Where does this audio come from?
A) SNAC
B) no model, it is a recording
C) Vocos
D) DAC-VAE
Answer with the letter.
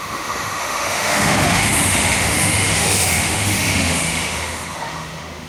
D